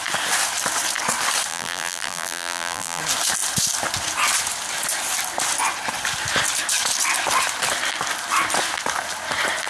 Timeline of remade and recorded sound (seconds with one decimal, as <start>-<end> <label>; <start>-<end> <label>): 0.0-1.5 recorded; 1.5-3.0 remade; 3.0-9.7 recorded